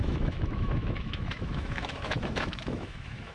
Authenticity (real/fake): fake